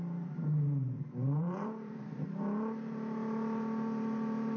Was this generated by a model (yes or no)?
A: yes